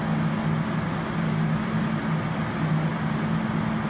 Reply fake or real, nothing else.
real